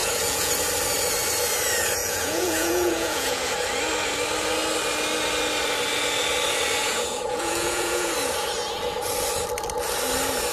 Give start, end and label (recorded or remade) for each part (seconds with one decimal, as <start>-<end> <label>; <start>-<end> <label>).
0.0-0.5 remade; 0.5-2.0 recorded; 2.0-3.5 remade; 3.5-6.8 recorded; 6.8-8.1 remade; 8.1-10.5 recorded